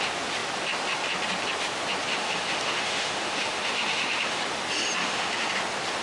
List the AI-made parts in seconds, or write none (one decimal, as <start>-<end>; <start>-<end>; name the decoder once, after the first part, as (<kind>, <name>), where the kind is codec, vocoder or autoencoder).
2.1-4.4 (autoencoder, DAC-VAE); 5.0-5.5